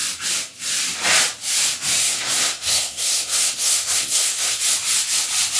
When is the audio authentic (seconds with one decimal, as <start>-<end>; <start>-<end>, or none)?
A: 0.0-2.0; 4.6-5.6